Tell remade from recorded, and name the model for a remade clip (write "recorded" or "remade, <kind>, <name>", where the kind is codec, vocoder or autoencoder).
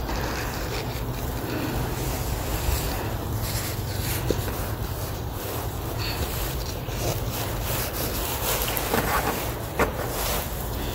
remade, vocoder, BigVGAN v2